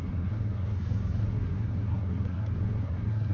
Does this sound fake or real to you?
fake